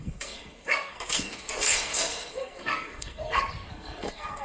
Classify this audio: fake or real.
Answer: fake